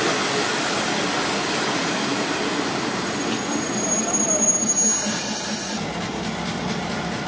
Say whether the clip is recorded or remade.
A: recorded